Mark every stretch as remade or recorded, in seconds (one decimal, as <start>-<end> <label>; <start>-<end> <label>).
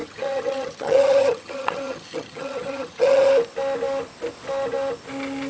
0.0-3.3 remade; 3.3-5.5 recorded